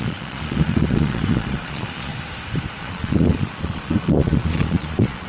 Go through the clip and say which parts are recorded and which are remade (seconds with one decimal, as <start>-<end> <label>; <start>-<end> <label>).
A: 0.0-2.1 remade; 2.1-2.8 recorded; 2.8-5.3 remade